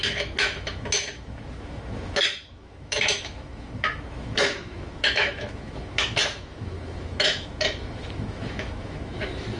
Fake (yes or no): yes